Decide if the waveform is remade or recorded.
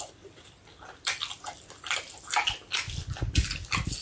recorded